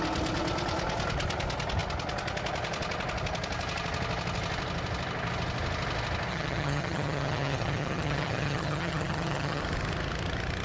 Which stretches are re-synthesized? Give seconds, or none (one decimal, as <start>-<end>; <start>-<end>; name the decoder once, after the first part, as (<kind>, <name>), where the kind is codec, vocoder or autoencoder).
6.3-9.6 (vocoder, HiFi-GAN)